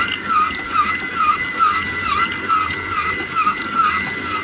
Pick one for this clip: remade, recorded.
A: recorded